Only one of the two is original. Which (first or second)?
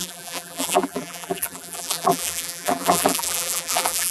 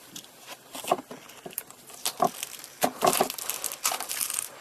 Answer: second